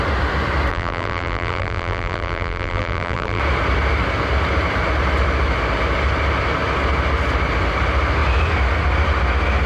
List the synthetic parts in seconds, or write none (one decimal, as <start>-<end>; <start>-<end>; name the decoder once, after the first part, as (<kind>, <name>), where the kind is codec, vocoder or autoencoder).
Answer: 0.7-3.4 (vocoder, BigVGAN v2)